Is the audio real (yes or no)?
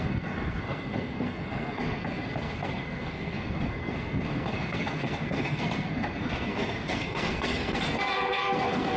no